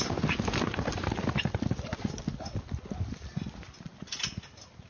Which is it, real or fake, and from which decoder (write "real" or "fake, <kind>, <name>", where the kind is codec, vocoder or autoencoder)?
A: real